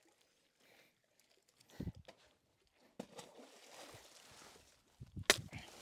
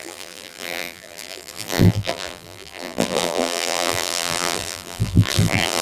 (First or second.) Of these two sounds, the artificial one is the second